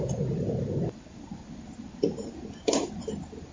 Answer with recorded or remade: remade